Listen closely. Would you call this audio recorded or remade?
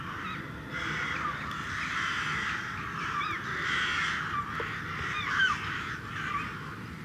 recorded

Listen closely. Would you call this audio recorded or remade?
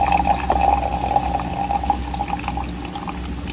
recorded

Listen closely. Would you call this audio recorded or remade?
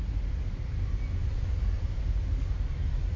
recorded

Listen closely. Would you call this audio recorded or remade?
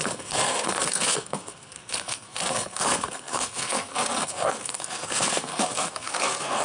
remade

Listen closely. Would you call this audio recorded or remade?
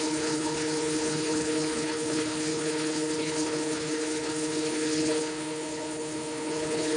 remade